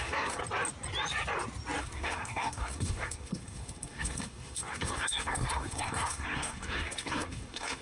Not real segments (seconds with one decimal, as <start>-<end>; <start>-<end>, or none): 0.0-0.4; 1.8-7.8